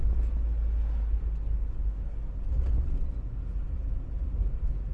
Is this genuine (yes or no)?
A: yes